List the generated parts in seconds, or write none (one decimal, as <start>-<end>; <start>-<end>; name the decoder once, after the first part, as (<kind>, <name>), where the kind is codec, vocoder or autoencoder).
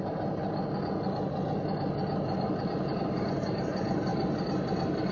0.0-0.4 (vocoder, BigVGAN v2); 3.0-4.1